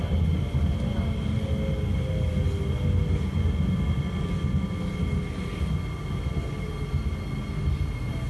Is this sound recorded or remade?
recorded